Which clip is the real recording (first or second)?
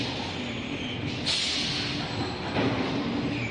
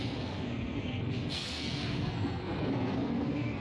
first